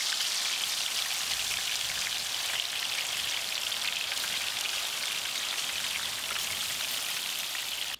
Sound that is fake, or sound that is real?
real